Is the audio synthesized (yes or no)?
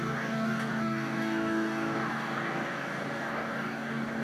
yes